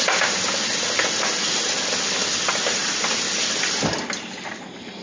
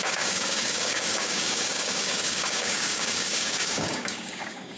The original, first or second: first